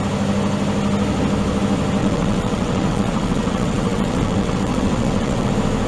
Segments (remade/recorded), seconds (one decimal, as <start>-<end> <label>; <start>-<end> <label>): 0.0-2.0 recorded; 2.0-5.5 remade; 5.5-5.9 recorded